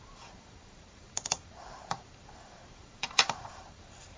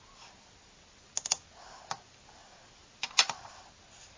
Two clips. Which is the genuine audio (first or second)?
second